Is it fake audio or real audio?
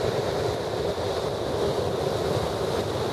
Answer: real